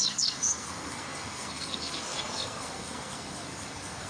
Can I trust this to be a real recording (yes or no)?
no